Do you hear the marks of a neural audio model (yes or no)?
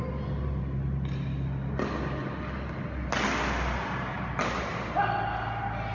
no